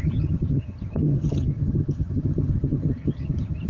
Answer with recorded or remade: remade